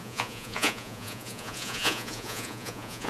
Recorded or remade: remade